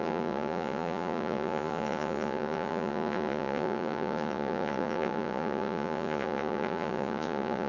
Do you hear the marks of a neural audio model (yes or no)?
yes